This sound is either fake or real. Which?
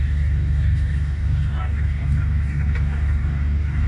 fake